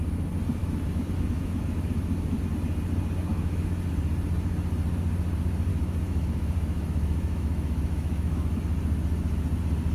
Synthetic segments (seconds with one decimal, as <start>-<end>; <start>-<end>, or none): 0.6-2.4; 3.3-3.9; 5.7-8.6